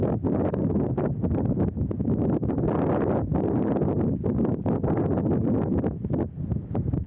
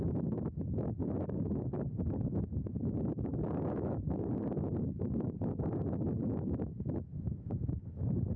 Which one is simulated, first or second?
second